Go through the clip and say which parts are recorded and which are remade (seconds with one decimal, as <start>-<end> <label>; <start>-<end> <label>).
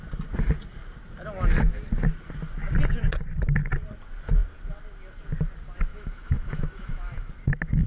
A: 0.0-5.9 recorded; 5.9-7.3 remade; 7.3-7.9 recorded